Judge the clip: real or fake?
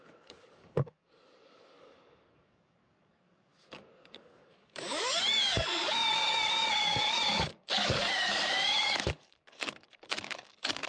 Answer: fake